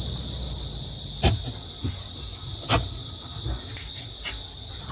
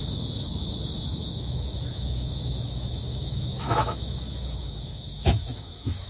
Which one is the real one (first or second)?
first